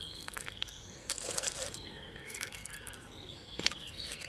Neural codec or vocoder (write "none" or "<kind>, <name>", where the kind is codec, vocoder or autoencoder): codec, SNAC